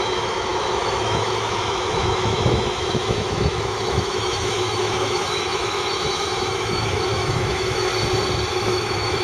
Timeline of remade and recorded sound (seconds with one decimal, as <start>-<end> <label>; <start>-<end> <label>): 0.0-7.9 remade; 7.9-8.5 recorded; 8.5-9.2 remade